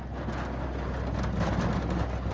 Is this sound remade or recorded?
recorded